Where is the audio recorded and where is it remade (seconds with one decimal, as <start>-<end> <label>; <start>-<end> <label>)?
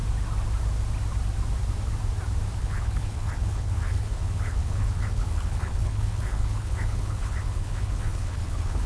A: 0.0-2.6 recorded; 2.6-8.9 remade